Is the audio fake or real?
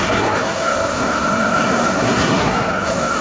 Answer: fake